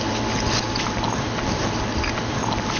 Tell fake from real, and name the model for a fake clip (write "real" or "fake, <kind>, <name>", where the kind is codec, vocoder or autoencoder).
real